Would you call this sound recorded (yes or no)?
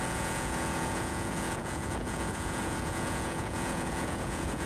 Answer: no